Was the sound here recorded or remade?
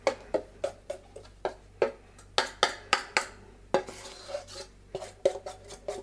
recorded